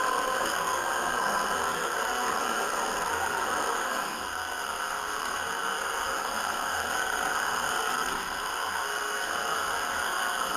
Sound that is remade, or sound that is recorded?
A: remade